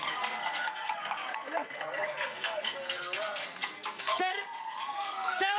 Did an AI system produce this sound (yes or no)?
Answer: yes